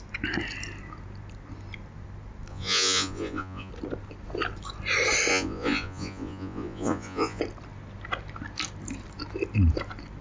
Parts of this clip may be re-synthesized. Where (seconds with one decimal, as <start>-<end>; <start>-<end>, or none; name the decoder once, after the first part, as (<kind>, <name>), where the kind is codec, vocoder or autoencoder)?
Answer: 2.5-3.7 (vocoder, Vocos); 5.3-7.4